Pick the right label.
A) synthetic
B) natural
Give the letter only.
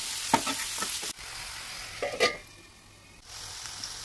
B